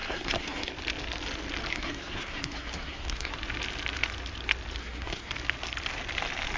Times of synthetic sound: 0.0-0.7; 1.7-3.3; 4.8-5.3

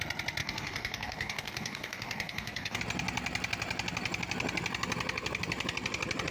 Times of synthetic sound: 0.4-2.8

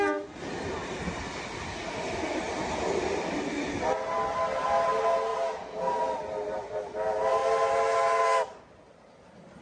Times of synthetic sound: none

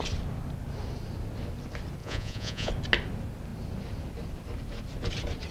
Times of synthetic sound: 2.0-2.7

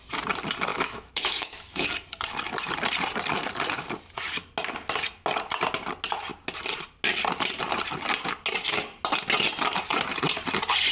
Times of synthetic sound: 0.7-1.9

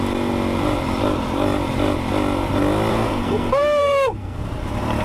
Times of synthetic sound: 2.9-4.4

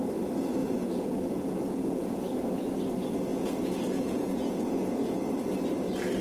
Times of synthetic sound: 0.6-2.2; 3.3-5.2